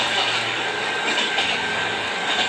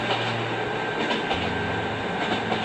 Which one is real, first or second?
second